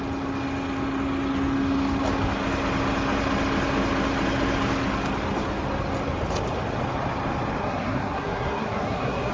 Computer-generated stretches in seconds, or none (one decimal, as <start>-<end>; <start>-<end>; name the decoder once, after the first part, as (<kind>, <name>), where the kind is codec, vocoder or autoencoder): 7.6-9.3 (codec, SNAC)